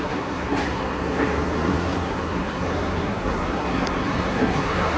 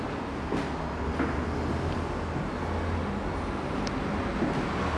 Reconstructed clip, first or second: first